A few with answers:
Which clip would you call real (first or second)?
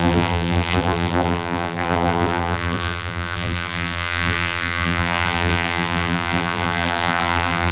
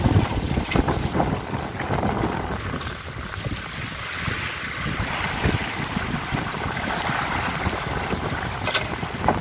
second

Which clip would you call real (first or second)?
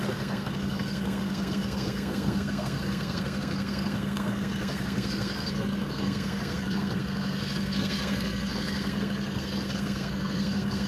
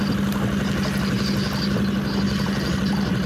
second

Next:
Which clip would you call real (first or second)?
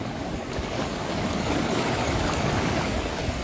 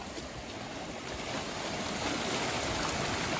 second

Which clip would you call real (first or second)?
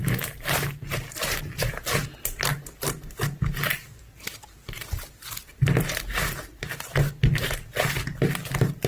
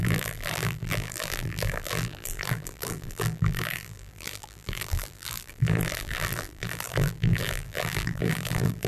first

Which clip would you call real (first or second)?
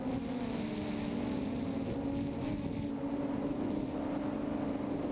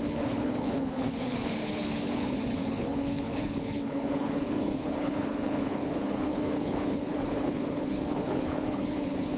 first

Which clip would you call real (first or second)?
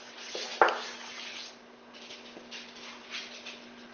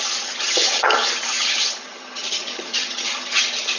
first